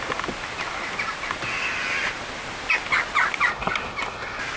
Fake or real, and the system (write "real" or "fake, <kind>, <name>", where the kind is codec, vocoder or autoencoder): real